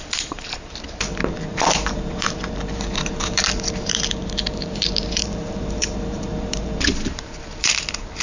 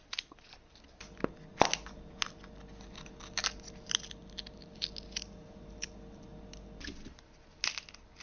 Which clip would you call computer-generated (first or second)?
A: first